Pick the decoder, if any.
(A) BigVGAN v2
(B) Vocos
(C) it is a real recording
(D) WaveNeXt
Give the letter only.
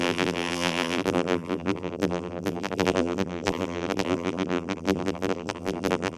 A